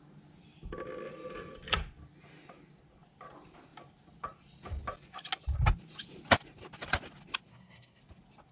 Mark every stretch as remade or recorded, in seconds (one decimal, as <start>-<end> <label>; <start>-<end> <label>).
0.0-7.5 recorded; 7.5-8.0 remade; 8.0-8.5 recorded